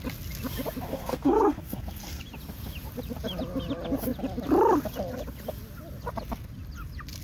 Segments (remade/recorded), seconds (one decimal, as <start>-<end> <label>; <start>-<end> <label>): 0.0-0.9 recorded; 0.9-2.2 remade; 2.2-7.2 recorded